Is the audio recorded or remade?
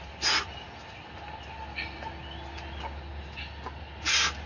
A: recorded